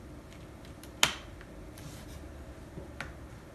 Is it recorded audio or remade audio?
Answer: recorded